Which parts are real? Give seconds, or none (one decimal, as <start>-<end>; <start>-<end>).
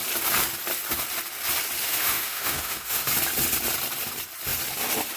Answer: 0.0-1.8; 3.1-5.2